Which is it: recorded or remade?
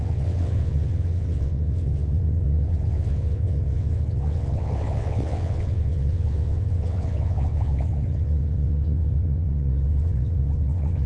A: remade